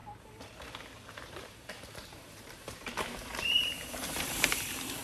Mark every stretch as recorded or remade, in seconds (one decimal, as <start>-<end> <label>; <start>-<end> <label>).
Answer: 0.0-1.1 recorded; 1.1-5.0 remade